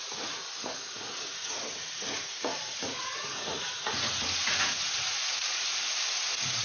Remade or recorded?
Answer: remade